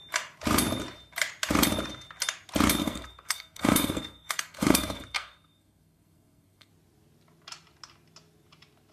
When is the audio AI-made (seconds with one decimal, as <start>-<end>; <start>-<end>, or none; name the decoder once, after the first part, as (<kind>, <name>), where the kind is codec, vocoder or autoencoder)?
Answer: 2.8-6.7 (codec, SNAC)